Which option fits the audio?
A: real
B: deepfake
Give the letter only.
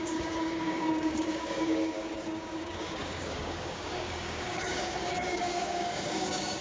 B